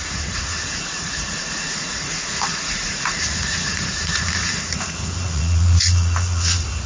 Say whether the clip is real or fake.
fake